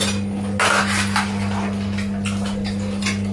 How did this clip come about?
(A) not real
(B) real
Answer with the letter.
B